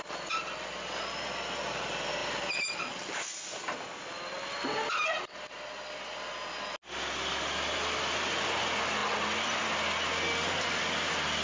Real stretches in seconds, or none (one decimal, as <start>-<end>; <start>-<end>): 0.0-2.2; 2.8-11.4